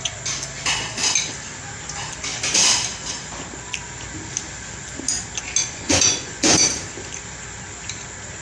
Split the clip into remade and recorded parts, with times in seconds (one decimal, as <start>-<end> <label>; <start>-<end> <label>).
0.0-5.6 recorded; 5.6-6.8 remade; 6.8-8.4 recorded